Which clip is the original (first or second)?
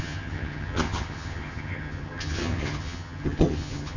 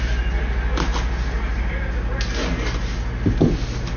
second